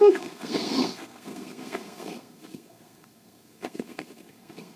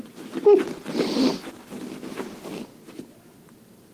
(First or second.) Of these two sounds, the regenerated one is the first